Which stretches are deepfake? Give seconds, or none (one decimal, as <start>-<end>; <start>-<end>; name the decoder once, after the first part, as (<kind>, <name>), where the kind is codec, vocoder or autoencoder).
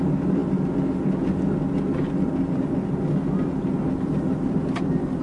none